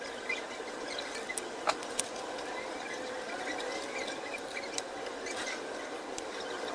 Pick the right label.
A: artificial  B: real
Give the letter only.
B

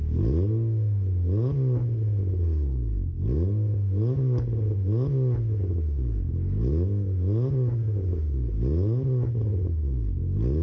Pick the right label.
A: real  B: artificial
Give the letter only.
A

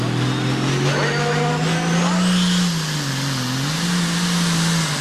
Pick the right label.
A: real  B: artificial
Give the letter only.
A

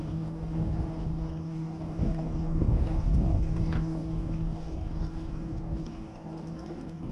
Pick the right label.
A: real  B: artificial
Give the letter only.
B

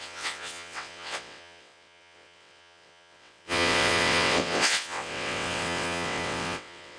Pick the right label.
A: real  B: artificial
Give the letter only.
B